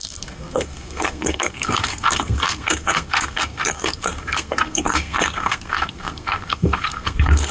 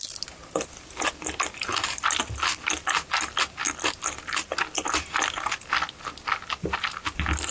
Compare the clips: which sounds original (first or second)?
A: second